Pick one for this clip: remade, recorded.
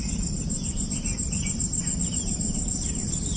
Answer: remade